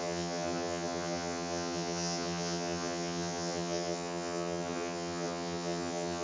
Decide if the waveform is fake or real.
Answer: fake